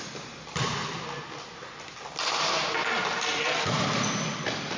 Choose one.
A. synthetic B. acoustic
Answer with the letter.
B